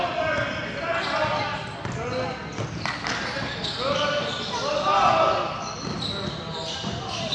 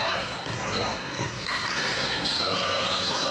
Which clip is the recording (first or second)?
first